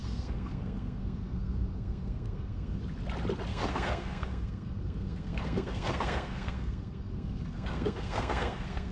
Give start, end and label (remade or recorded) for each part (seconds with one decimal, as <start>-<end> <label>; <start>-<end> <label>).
0.0-2.8 remade; 2.8-3.5 recorded; 3.5-8.9 remade